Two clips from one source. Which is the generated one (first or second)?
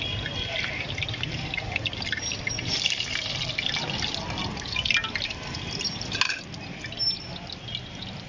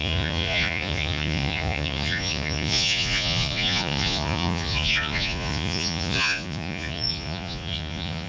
second